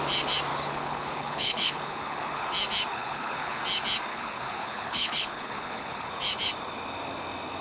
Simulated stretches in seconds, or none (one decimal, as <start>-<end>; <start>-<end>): 0.5-2.4; 2.9-3.6; 4.1-6.1